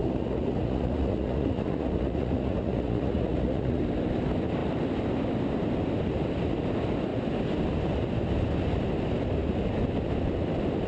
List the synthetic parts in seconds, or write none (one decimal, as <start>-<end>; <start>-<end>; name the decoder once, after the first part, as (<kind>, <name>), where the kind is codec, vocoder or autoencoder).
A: 0.0-3.8 (vocoder, Vocos)